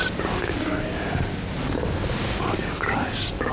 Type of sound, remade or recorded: recorded